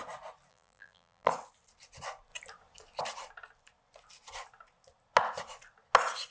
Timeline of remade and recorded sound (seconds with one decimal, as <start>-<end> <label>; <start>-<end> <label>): 0.0-0.5 recorded; 0.5-1.3 remade; 1.3-6.3 recorded